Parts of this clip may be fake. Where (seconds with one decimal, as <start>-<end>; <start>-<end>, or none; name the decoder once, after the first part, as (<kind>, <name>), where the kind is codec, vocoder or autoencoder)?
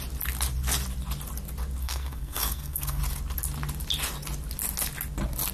1.8-3.0 (codec, SNAC)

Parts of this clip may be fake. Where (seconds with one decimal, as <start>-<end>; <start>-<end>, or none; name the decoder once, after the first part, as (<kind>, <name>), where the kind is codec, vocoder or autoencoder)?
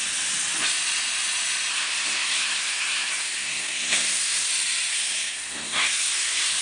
1.7-4.5 (codec, SNAC); 4.9-6.6